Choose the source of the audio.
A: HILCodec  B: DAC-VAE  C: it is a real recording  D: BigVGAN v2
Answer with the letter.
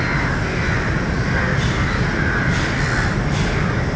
C